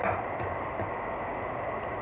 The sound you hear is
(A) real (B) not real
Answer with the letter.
A